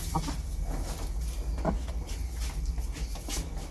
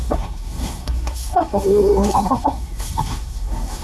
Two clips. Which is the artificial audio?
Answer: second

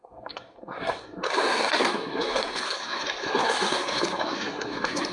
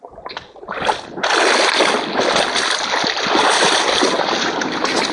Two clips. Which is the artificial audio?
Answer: first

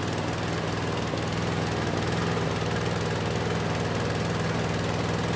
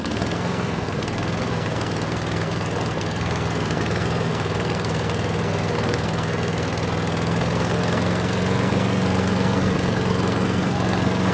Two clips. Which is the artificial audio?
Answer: second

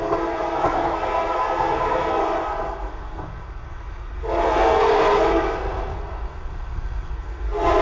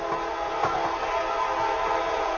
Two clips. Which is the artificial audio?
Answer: first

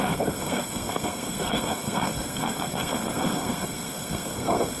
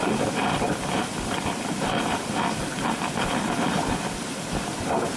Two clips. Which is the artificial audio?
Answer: first